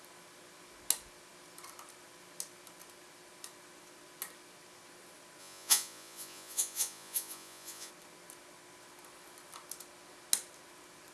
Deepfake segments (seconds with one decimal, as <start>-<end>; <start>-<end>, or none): 5.4-7.9